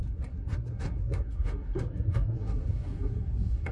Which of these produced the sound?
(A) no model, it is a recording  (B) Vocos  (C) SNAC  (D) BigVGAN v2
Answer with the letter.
C